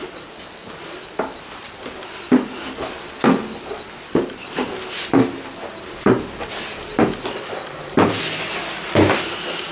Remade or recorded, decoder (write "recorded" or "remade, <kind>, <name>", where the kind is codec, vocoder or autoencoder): recorded